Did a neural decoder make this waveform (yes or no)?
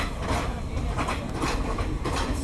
no